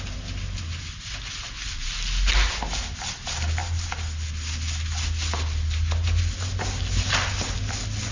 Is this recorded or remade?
recorded